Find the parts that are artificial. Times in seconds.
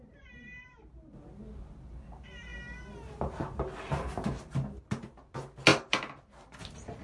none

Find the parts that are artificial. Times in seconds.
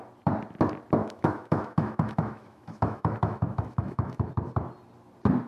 1.0-4.3 (autoencoder, DAC-VAE)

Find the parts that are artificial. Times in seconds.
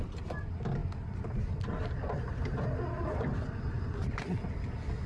none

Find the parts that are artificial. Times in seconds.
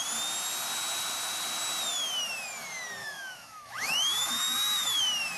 3.0-5.0 (autoencoder, DAC-VAE)